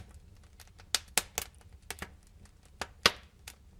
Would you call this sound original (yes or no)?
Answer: yes